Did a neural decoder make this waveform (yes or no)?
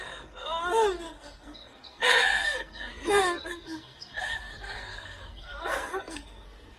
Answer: yes